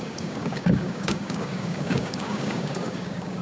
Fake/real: fake